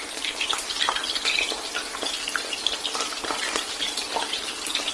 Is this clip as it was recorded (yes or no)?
yes